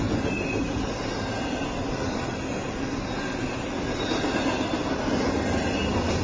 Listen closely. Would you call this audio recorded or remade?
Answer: recorded